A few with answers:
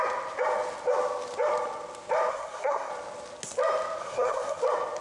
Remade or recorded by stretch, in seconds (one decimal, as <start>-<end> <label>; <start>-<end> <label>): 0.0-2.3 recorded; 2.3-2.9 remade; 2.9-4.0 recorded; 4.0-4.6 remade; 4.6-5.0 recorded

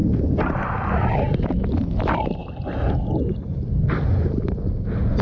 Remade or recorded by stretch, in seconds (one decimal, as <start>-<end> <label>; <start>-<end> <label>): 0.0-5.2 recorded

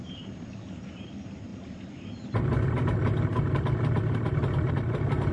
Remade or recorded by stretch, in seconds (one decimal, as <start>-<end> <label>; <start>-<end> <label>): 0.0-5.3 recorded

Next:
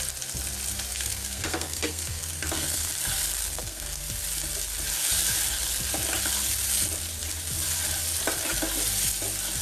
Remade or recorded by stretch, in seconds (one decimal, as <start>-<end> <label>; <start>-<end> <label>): 0.0-0.9 recorded; 0.9-2.9 remade; 2.9-3.4 recorded; 3.4-4.0 remade; 4.0-9.6 recorded

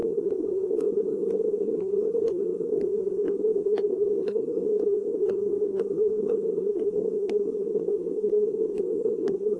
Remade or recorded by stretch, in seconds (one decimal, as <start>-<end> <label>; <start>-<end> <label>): 0.0-9.6 remade

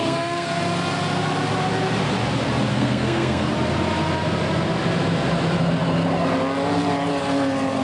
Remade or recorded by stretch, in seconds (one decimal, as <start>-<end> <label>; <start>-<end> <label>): 0.0-0.6 remade; 0.6-2.7 recorded; 2.7-3.5 remade; 3.5-7.8 recorded